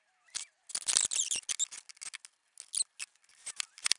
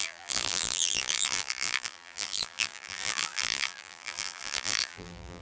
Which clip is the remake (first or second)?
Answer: second